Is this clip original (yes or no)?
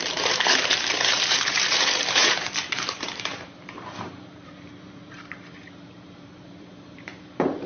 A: no